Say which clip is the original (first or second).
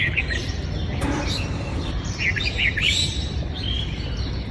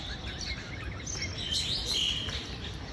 second